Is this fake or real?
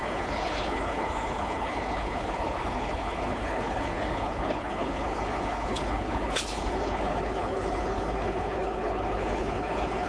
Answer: fake